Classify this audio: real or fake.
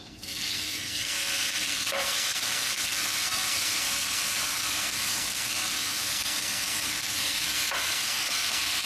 fake